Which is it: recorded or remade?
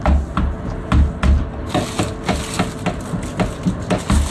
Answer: recorded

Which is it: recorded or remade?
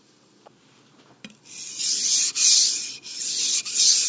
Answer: recorded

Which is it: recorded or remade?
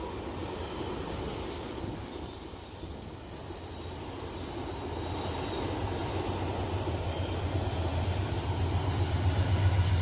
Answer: recorded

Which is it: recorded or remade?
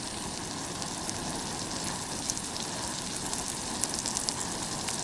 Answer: recorded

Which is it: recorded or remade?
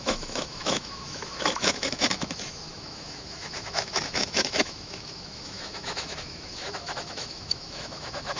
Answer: remade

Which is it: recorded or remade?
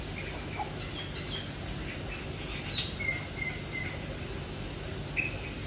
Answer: recorded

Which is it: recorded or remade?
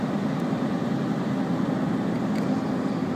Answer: recorded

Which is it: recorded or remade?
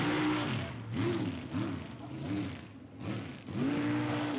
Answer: recorded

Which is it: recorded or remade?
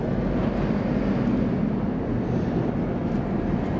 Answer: recorded